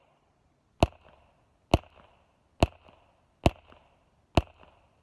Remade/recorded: recorded